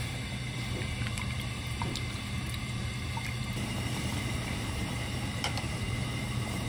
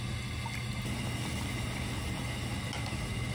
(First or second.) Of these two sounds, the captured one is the second